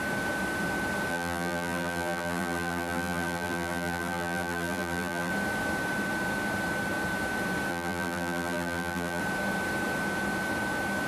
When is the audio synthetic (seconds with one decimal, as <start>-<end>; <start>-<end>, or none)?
1.1-5.3; 7.7-9.2